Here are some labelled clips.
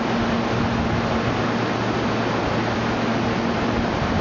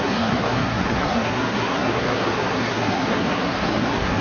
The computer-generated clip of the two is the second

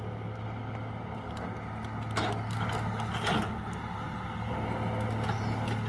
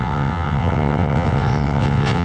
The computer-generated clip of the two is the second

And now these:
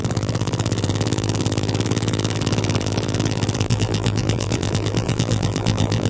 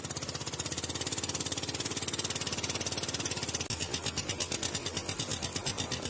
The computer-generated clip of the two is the first